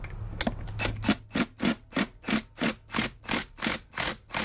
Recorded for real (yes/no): yes